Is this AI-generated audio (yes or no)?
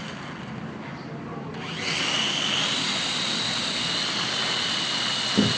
no